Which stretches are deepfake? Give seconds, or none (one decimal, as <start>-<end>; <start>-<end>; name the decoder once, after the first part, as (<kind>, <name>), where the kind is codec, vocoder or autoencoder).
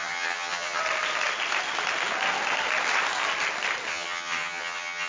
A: 0.0-0.8 (vocoder, HiFi-GAN); 3.9-5.1